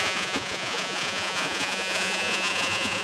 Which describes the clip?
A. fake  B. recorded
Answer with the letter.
A